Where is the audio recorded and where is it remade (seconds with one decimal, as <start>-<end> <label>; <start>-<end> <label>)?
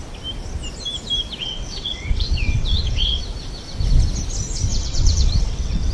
0.0-1.4 recorded; 1.4-3.2 remade; 3.2-4.7 recorded; 4.7-5.9 remade